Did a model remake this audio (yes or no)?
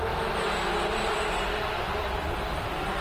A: no